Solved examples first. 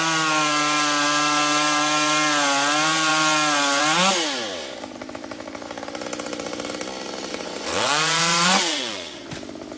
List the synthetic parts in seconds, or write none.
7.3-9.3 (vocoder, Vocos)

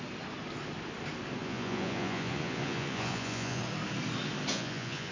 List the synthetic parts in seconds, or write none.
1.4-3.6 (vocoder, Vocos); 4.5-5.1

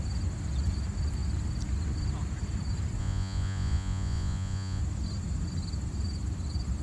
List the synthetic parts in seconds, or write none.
3.0-4.8 (vocoder, Vocos)